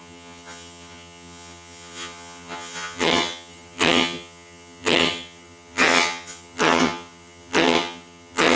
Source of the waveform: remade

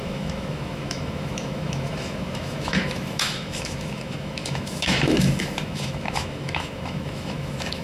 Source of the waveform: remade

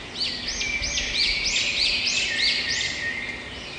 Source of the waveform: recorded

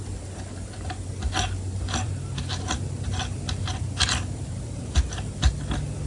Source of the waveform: recorded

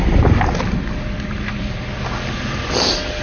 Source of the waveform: recorded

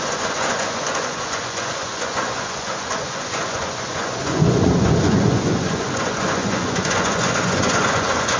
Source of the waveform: remade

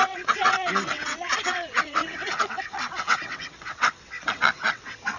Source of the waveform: remade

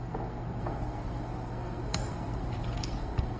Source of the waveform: remade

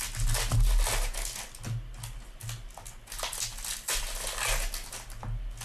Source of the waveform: recorded